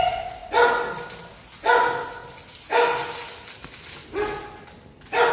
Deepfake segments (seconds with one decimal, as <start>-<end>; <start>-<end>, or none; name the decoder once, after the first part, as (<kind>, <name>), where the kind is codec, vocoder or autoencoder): none